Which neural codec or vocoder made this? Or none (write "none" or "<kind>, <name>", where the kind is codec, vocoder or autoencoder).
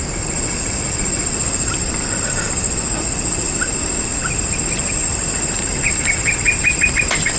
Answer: none